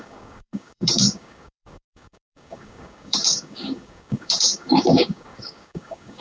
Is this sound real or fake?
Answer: fake